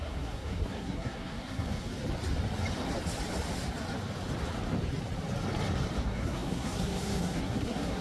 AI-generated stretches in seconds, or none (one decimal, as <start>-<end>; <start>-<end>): 0.0-1.9; 6.0-8.0